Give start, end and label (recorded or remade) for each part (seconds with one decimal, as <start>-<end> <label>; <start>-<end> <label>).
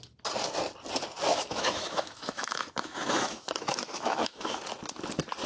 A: 0.0-1.3 recorded; 1.3-4.6 remade; 4.6-5.5 recorded